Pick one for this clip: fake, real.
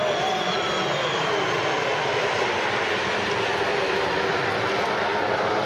real